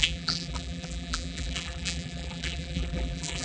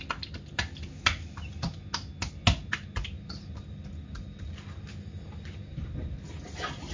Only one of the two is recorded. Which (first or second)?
second